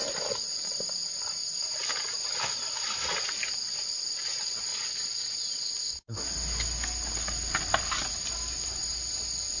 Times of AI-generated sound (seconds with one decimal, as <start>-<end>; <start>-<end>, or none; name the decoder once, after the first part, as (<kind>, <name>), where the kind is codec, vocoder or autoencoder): none